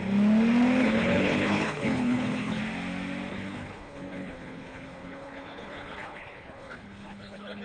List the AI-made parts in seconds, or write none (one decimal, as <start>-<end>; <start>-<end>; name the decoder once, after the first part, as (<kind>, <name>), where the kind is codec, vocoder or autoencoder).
0.8-2.6 (codec, HILCodec); 3.3-7.6